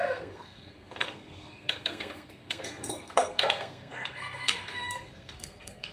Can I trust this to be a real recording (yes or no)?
no